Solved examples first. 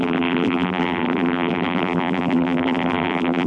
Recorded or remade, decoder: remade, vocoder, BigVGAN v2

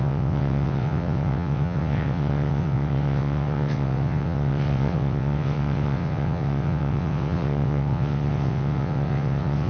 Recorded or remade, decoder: remade, vocoder, WaveNeXt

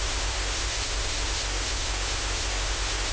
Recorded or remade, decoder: remade, codec, SNAC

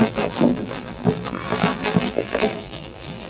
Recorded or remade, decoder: remade, vocoder, BigVGAN v2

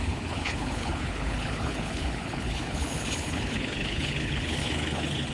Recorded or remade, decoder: remade, codec, HILCodec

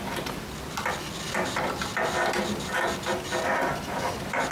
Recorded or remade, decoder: recorded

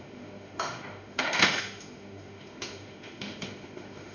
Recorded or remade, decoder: remade, autoencoder, DAC-VAE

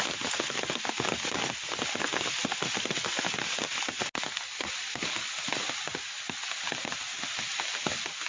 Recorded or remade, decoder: recorded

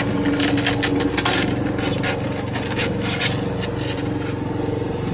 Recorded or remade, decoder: recorded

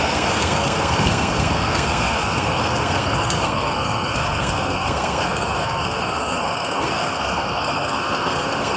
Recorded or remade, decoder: remade, codec, SNAC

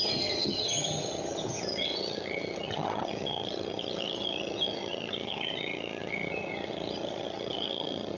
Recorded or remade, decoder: remade, vocoder, HiFi-GAN